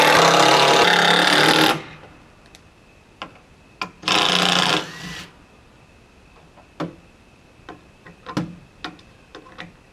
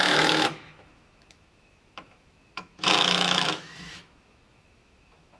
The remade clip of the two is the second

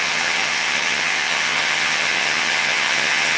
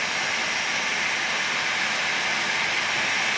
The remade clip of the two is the first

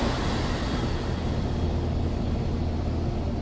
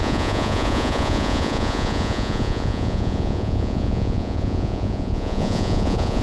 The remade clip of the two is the second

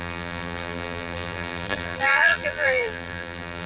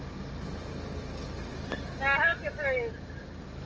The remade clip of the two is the first